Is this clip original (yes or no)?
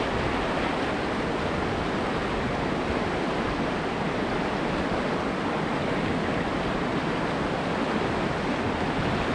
yes